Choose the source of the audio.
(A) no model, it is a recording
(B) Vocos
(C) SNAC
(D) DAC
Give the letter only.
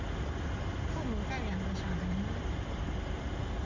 A